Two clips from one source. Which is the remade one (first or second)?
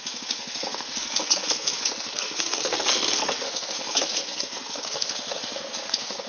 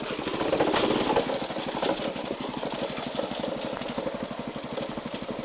first